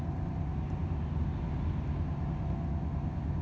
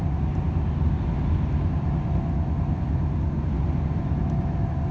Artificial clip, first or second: second